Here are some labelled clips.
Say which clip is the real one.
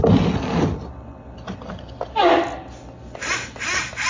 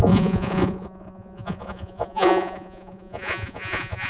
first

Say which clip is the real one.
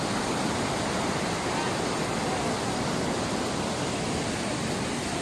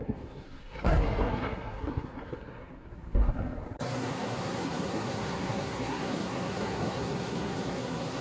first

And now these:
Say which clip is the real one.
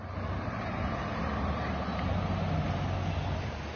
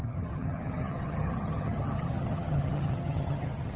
first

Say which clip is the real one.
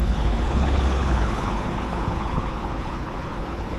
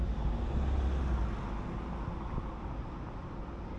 second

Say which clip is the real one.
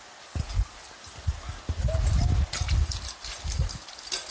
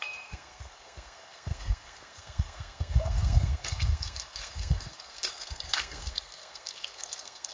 first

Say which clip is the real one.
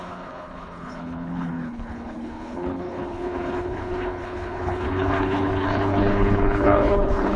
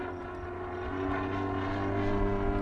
second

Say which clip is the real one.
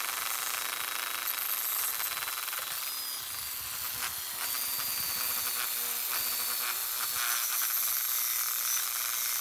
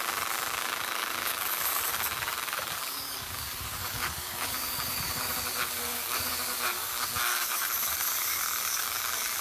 first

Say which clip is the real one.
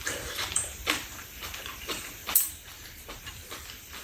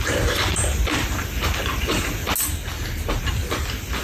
second